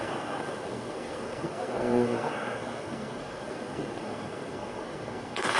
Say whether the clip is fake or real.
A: fake